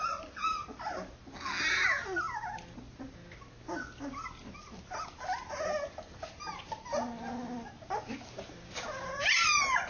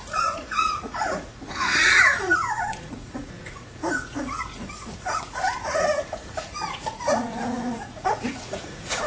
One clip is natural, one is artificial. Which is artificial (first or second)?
second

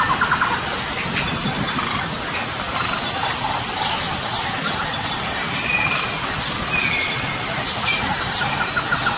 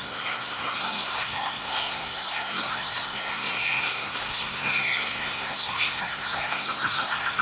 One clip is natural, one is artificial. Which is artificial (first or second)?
second